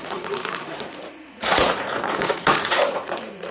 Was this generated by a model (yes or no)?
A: yes